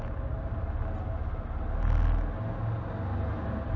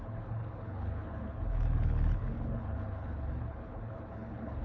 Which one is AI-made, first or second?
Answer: second